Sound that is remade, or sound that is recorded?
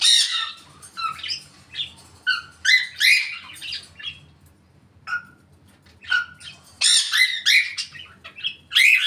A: recorded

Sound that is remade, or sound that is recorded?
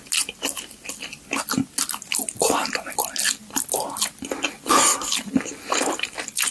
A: recorded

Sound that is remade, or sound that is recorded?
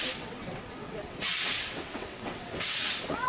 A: remade